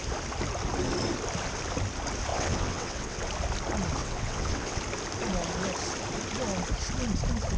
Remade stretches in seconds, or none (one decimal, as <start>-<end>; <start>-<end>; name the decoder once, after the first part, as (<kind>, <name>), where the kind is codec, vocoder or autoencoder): 2.3-3.2 (vocoder, WaveNeXt); 4.0-4.8